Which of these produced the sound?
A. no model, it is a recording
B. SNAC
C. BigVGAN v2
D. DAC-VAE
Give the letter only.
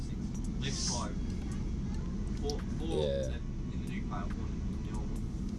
A